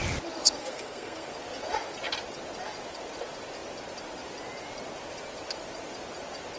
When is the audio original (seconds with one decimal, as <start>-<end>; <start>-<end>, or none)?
0.0-0.6; 1.3-6.6